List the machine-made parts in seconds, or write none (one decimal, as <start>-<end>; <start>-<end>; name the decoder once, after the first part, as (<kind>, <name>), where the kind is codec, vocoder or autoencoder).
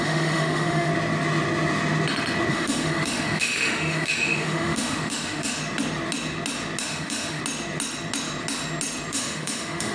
0.0-0.9 (autoencoder, DAC-VAE); 2.5-5.6; 6.8-7.4; 9.1-9.9